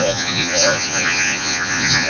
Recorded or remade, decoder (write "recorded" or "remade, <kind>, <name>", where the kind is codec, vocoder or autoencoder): remade, vocoder, Vocos